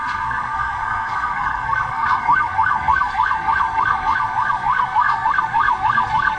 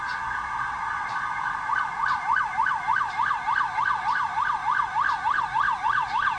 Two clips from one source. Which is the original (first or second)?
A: second